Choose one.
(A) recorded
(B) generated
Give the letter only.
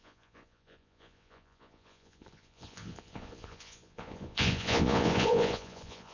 B